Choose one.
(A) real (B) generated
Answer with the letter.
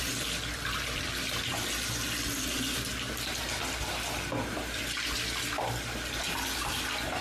A